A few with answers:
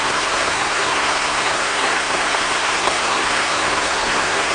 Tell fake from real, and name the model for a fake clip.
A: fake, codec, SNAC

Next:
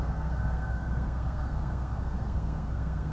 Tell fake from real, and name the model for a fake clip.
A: fake, codec, SNAC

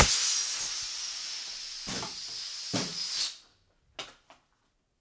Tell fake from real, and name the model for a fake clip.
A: real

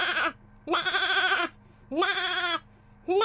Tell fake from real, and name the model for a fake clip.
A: real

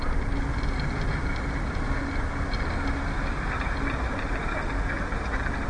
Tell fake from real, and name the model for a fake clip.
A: real